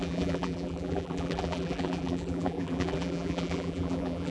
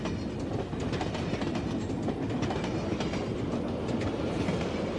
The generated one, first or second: first